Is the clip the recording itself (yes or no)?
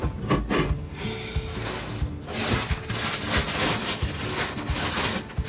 yes